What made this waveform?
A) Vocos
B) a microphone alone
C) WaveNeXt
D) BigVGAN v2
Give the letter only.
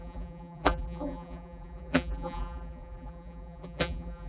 D